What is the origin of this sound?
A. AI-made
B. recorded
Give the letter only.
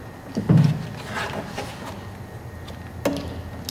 B